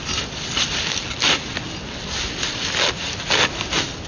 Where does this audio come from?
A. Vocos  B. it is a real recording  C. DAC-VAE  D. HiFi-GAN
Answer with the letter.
B